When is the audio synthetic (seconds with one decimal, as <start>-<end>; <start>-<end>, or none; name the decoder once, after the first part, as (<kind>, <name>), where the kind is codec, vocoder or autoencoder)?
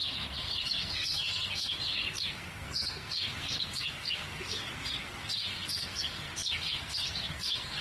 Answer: 0.0-7.8 (codec, SNAC)